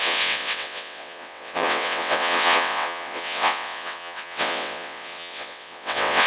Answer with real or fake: fake